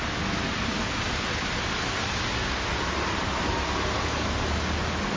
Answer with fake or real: real